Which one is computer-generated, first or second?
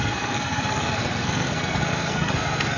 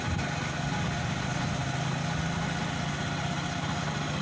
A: first